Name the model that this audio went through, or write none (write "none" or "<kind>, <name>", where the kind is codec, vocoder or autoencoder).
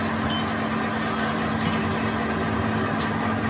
none